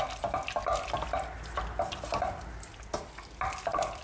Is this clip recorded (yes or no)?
yes